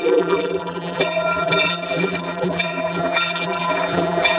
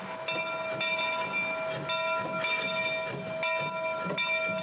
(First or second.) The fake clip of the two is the first